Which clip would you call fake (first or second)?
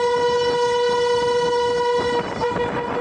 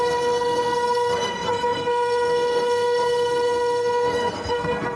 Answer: second